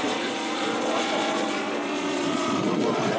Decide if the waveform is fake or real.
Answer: fake